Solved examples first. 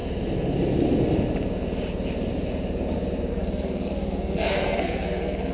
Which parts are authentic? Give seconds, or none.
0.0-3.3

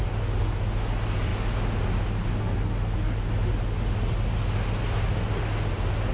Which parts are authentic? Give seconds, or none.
0.0-6.1